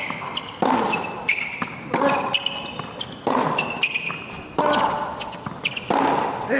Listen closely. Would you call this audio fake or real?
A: real